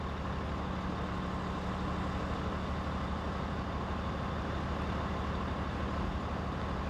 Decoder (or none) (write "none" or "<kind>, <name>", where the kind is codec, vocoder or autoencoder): none